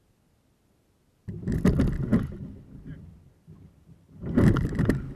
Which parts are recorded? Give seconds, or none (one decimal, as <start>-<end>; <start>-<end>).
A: 0.0-5.2